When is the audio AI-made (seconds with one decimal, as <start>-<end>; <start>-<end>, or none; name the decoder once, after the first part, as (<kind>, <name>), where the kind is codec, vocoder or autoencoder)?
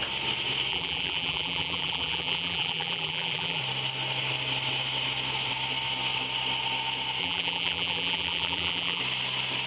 0.7-3.6 (vocoder, BigVGAN v2); 7.2-9.0